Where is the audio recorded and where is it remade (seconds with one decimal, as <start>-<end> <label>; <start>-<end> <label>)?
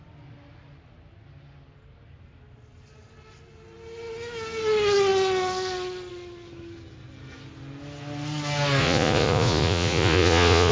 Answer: 0.0-8.8 recorded; 8.8-10.7 remade